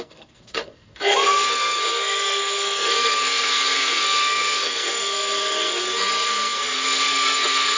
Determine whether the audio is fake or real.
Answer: fake